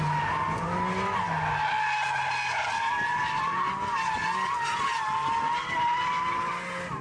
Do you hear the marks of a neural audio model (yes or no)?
no